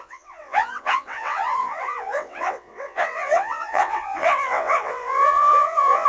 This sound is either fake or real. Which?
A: fake